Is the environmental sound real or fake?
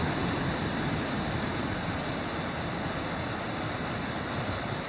real